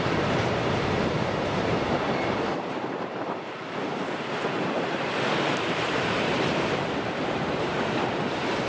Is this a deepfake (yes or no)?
yes